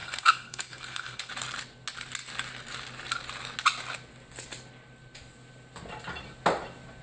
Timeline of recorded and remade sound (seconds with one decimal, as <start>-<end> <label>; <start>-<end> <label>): 0.0-1.3 remade; 1.3-7.0 recorded